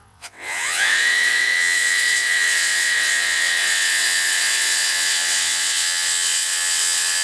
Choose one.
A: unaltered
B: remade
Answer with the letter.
B